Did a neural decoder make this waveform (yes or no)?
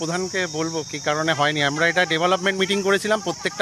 no